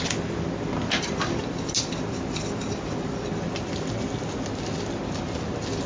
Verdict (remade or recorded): recorded